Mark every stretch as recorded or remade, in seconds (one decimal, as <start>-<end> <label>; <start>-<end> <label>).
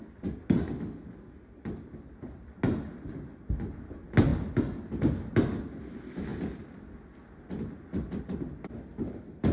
0.0-9.5 recorded